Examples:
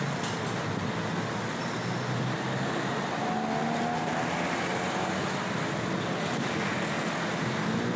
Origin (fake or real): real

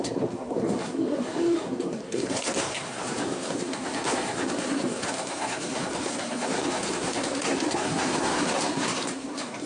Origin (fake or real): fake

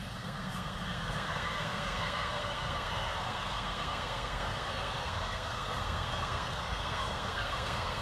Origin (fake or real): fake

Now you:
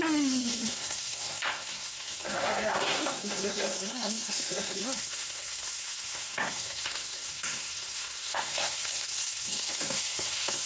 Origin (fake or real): fake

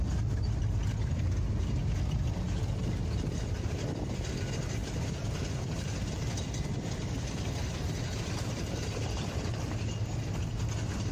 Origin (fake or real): real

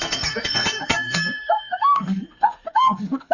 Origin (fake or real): fake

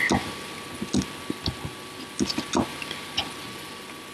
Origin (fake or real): real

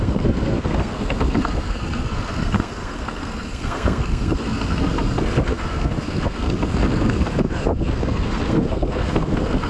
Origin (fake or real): fake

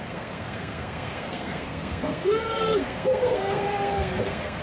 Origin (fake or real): fake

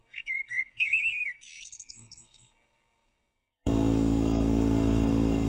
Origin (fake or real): fake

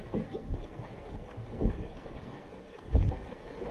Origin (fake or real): fake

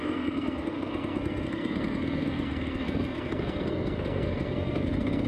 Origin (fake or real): fake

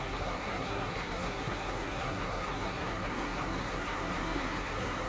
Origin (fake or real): fake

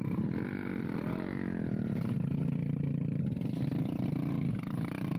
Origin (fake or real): real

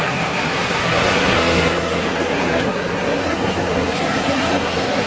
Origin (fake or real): fake